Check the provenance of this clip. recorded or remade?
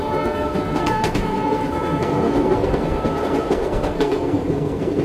remade